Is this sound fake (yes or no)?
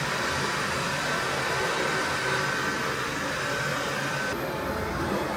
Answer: no